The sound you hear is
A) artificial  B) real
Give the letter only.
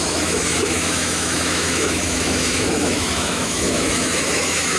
A